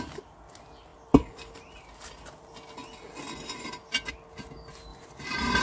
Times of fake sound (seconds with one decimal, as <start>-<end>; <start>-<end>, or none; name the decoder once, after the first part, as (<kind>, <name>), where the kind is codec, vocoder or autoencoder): 4.9-5.6 (vocoder, BigVGAN v2)